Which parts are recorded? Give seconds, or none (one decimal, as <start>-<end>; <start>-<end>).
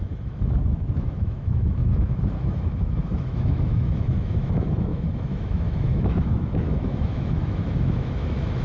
none